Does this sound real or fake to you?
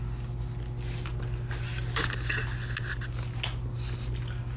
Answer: real